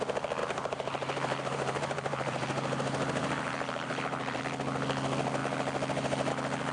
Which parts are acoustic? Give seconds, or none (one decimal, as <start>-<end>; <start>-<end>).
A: 0.0-0.4; 4.4-6.7